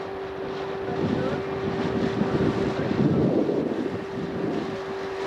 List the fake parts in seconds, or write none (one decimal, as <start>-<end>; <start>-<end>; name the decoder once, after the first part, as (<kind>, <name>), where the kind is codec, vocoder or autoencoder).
none